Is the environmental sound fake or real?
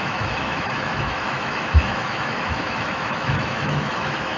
fake